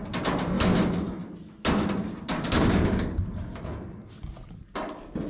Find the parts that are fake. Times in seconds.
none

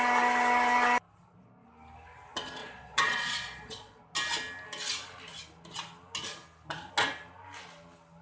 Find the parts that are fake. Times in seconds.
2.6-4.0 (vocoder, Vocos)

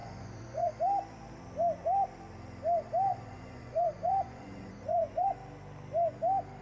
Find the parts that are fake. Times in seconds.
0.0-0.7 (vocoder, Vocos); 3.1-5.3

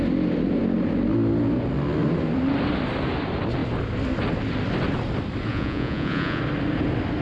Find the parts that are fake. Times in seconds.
5.5-6.4 (vocoder, Vocos)

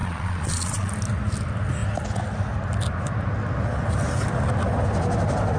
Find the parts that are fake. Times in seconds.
0.0-0.9 (vocoder, Vocos)

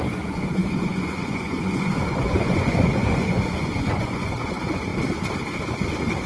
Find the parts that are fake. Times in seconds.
0.0-4.9 (vocoder, Vocos)